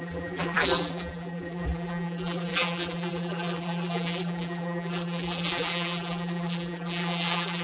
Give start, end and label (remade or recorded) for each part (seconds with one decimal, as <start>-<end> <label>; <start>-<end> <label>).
0.0-7.6 remade